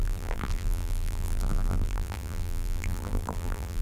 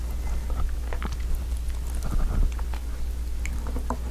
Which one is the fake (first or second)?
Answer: first